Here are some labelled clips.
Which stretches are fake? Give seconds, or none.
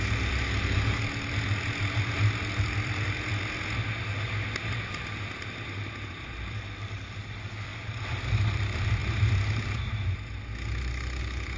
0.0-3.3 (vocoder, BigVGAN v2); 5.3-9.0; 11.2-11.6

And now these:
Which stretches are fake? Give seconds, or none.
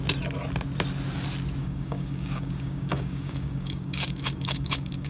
1.6-5.1 (codec, DAC)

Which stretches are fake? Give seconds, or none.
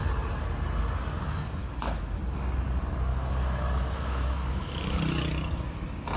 1.6-2.2 (autoencoder, DAC-VAE); 3.1-5.0